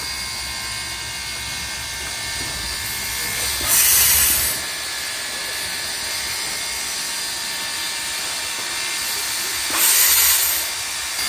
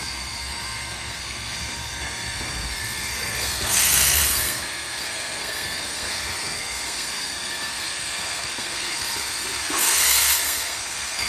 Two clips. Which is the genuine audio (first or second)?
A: first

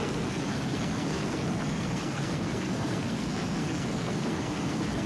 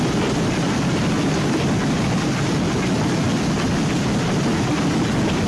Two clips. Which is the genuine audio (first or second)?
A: second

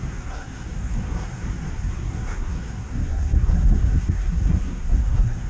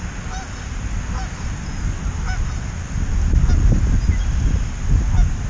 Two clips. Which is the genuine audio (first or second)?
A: second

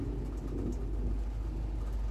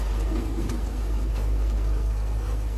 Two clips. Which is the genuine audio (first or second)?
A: first